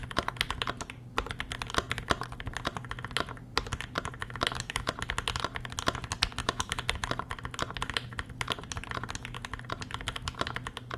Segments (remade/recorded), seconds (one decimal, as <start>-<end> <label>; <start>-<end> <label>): 0.0-4.2 recorded; 4.2-4.9 remade; 4.9-6.4 recorded; 6.4-7.1 remade; 7.1-11.0 recorded

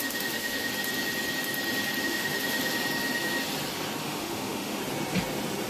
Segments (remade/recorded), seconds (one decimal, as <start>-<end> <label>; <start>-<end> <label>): 0.0-0.7 remade; 0.7-2.0 recorded; 2.0-2.6 remade; 2.6-4.0 recorded; 4.0-4.8 remade; 4.8-5.7 recorded

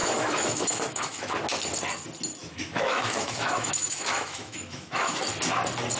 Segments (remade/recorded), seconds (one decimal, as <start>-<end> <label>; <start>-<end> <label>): 0.0-1.3 remade; 1.3-2.4 recorded; 2.4-5.2 remade; 5.2-6.0 recorded